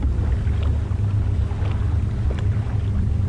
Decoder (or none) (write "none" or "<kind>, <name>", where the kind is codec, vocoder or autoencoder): none